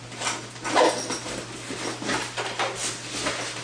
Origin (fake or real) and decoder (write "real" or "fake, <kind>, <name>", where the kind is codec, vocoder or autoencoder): real